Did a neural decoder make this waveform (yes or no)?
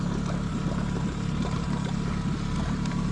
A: yes